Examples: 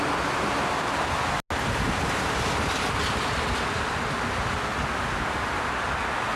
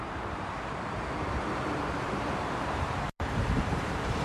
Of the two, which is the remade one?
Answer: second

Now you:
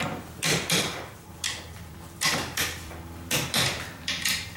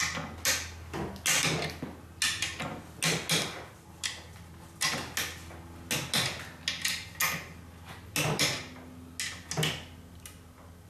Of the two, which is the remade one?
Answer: first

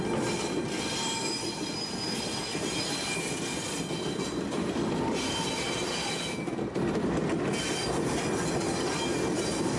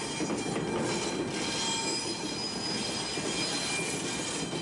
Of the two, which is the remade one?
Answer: first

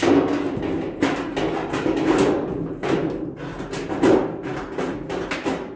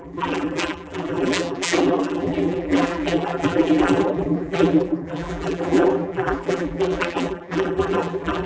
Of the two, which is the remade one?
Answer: second